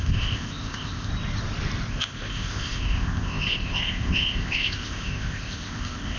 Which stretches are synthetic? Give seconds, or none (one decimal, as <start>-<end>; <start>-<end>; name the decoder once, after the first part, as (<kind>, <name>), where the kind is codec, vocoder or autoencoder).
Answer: 0.0-1.1 (codec, ZipCodec); 1.9-6.2